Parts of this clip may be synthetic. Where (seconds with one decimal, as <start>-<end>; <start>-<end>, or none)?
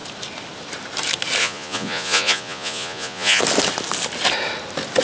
1.4-3.4